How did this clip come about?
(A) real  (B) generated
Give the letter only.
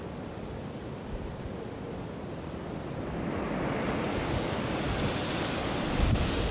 A